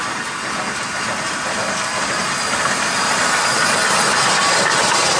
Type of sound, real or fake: real